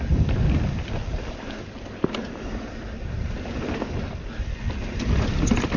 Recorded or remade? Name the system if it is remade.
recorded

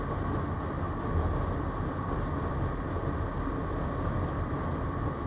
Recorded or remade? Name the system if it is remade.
recorded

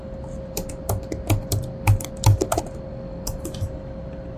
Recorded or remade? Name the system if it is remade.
recorded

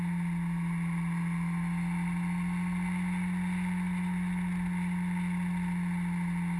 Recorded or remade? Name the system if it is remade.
recorded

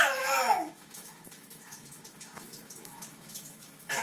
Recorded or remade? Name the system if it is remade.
remade, autoencoder, DAC-VAE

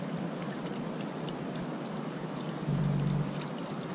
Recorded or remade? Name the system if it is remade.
recorded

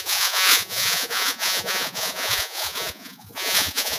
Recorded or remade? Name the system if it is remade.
remade, vocoder, Vocos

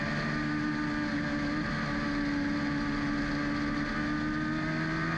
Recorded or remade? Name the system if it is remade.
recorded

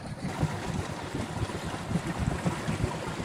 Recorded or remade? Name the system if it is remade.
recorded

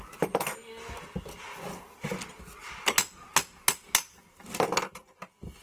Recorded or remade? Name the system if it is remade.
recorded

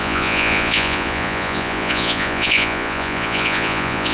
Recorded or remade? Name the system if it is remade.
remade, vocoder, Vocos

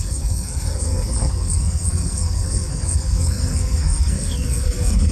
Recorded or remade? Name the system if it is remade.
remade, codec, SNAC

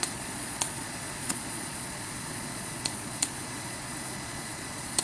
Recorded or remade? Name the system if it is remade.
remade, vocoder, Vocos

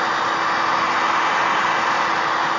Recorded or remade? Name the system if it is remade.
recorded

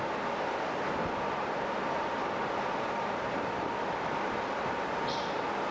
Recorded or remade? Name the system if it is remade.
remade, vocoder, BigVGAN v2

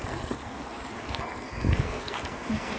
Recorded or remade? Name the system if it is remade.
remade, codec, SNAC